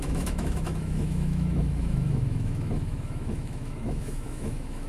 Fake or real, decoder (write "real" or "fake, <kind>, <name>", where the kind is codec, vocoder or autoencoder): fake, autoencoder, DAC-VAE